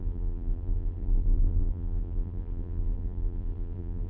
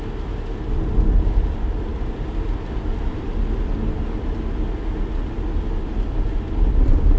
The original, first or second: second